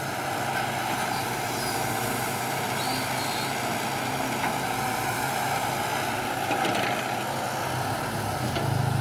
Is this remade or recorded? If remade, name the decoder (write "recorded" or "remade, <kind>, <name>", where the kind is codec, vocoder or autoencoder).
recorded